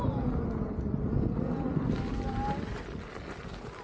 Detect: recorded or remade recorded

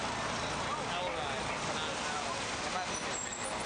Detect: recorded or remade recorded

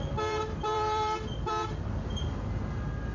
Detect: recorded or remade remade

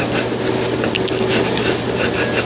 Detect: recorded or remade recorded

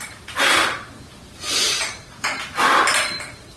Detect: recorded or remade recorded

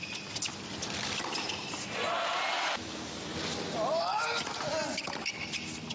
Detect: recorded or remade recorded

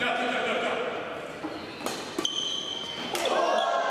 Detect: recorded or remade recorded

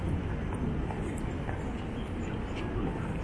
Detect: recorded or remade recorded